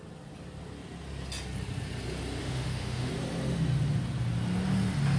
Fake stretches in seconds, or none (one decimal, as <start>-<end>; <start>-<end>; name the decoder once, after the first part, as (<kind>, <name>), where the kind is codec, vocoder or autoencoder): 2.4-3.1 (autoencoder, DAC-VAE)